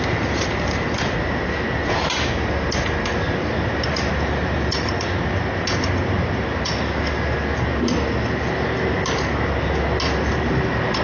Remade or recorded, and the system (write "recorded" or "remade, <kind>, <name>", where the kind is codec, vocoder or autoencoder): recorded